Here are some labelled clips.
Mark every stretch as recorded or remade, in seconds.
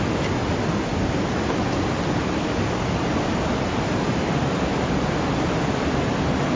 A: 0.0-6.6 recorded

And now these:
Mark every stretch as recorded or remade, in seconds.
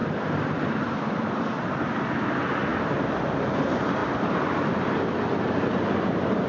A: 0.0-1.3 remade; 1.3-2.7 recorded; 2.7-3.2 remade; 3.2-4.0 recorded; 4.0-4.7 remade; 4.7-6.5 recorded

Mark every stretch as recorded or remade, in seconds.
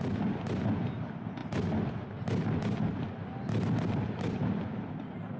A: 0.0-5.4 recorded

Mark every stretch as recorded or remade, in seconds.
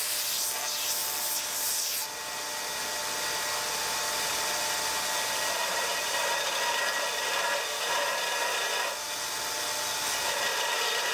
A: 0.0-5.6 recorded; 5.6-6.4 remade; 6.4-10.5 recorded; 10.5-11.1 remade